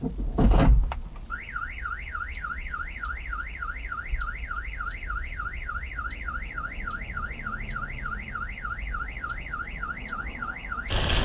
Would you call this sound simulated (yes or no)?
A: no